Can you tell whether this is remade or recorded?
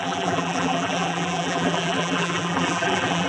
remade